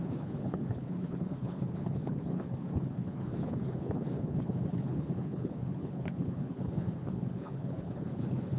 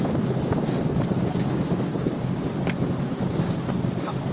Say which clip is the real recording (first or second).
second